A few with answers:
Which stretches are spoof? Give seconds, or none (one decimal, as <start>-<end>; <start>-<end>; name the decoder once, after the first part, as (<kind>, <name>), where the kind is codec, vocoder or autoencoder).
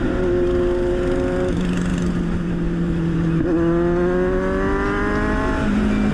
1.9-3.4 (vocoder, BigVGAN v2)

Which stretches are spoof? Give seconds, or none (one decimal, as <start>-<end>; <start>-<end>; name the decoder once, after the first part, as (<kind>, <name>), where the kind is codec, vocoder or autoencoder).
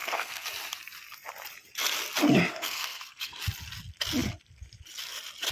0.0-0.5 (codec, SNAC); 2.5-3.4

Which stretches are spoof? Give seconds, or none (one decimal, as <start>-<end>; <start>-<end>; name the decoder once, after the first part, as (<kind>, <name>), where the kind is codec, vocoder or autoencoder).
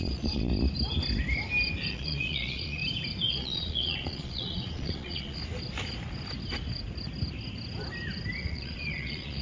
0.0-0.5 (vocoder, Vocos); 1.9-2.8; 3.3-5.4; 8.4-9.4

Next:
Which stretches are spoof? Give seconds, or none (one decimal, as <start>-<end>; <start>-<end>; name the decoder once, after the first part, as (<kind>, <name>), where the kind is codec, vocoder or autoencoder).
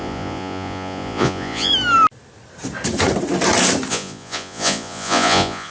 0.0-1.7 (vocoder, Vocos); 3.9-5.7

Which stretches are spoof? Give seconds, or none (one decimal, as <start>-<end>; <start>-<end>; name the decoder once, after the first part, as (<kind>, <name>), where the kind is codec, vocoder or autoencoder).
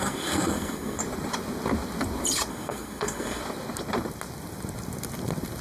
0.0-1.0 (codec, SNAC); 2.5-3.4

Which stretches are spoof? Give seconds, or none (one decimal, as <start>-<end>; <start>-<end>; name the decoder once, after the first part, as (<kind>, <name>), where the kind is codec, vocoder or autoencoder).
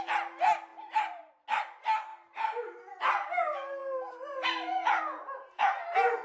0.7-1.3 (vocoder, BigVGAN v2); 3.8-5.0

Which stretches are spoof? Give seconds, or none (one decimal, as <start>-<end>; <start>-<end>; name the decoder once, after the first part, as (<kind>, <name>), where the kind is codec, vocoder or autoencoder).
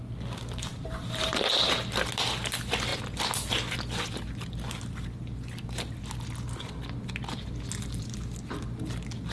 0.7-1.7 (vocoder, BigVGAN v2)